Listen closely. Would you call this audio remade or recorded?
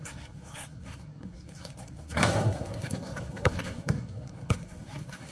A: remade